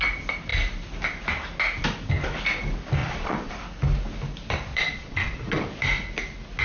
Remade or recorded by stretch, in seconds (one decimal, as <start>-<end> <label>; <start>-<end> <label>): 0.0-3.0 recorded; 3.0-3.5 remade; 3.5-4.7 recorded; 4.7-5.6 remade; 5.6-6.6 recorded